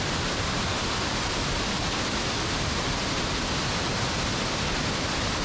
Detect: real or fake fake